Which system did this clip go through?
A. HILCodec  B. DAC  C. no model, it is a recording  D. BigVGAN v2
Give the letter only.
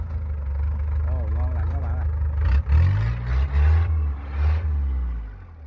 C